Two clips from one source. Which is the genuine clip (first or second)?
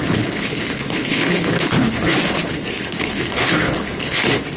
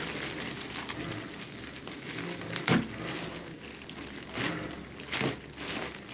second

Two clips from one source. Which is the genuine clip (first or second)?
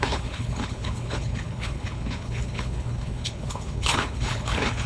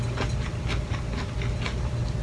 second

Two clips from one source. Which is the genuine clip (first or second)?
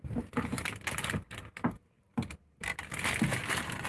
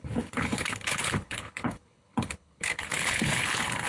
first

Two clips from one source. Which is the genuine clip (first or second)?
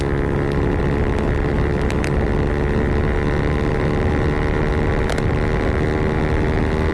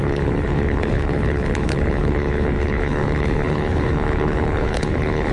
first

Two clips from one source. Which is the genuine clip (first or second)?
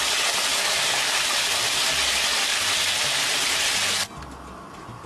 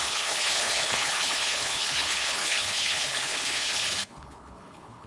first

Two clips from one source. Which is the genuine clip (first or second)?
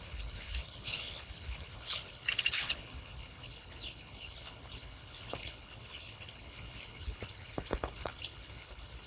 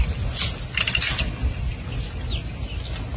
second